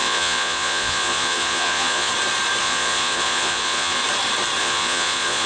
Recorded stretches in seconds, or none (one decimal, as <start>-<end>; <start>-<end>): 2.1-2.6; 4.0-4.6